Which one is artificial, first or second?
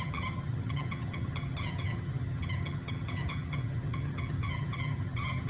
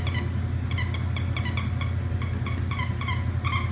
first